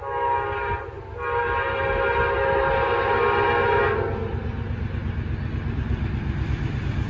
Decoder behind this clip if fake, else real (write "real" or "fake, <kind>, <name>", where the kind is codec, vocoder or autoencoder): real